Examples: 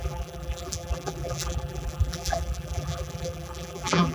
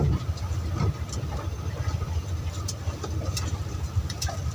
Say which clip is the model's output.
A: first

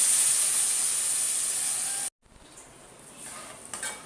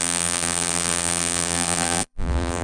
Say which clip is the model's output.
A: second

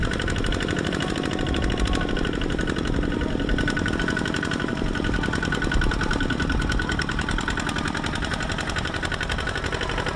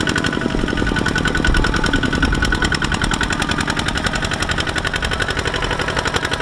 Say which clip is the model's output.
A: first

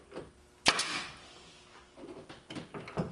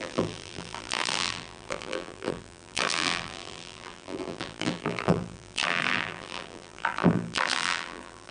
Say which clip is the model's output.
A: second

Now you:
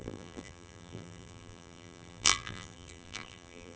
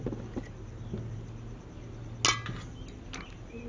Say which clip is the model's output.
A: first